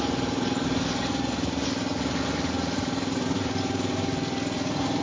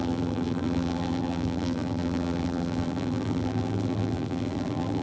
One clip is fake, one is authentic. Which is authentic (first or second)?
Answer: first